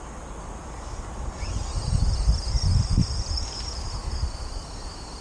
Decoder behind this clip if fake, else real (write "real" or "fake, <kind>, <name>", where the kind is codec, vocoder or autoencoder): real